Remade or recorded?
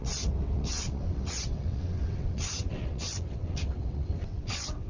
remade